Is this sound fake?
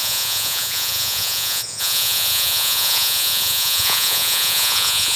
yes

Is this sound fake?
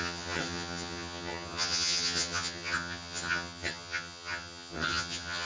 yes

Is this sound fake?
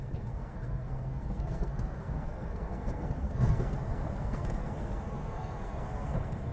yes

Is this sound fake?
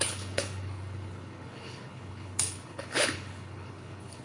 yes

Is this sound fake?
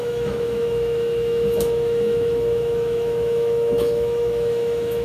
yes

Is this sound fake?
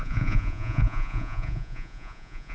yes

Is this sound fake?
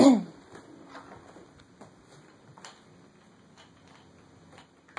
no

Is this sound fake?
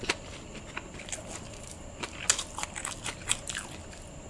no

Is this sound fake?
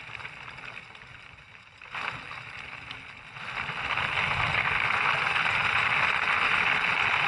no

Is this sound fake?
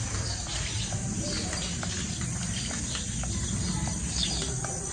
no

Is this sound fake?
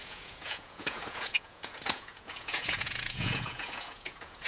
yes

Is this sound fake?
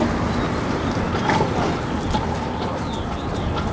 no